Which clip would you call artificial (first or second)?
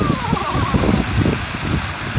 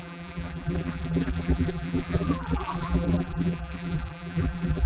second